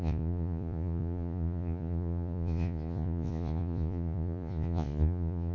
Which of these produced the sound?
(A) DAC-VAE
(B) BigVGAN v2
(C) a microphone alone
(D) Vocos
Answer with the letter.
D